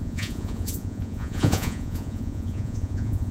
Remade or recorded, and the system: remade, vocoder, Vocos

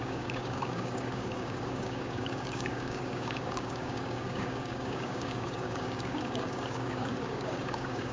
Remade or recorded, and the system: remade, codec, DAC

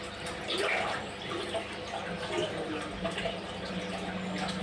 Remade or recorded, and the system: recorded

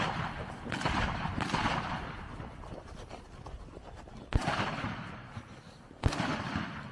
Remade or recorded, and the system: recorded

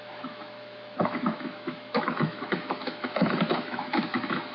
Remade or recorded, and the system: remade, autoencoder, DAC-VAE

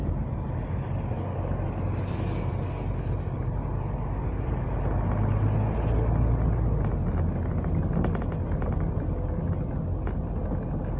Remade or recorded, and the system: recorded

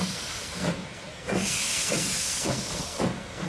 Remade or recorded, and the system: remade, codec, SNAC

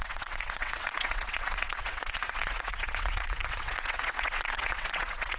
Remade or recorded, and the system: remade, vocoder, WaveNeXt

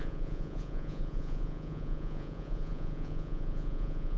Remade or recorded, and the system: remade, vocoder, Vocos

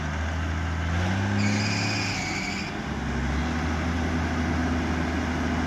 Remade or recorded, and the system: recorded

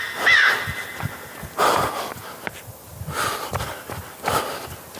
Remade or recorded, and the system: recorded